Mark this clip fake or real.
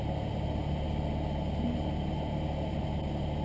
real